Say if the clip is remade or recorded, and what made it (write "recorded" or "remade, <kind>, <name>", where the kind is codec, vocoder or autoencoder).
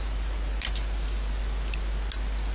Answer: recorded